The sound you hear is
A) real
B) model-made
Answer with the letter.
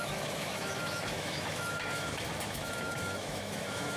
B